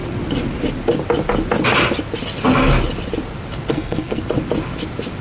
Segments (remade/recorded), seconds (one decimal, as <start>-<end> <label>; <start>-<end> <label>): 0.0-3.7 recorded; 3.7-4.2 remade; 4.2-5.2 recorded

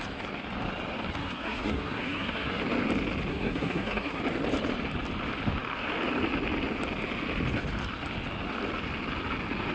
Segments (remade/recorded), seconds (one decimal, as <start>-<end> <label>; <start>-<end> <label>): 0.0-1.2 recorded; 1.2-2.6 remade; 2.6-3.3 recorded; 3.3-4.2 remade; 4.2-9.7 recorded

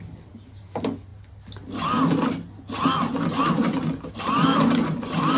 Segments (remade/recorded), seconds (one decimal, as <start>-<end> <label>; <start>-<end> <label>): 0.0-5.4 recorded